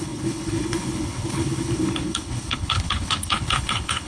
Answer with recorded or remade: remade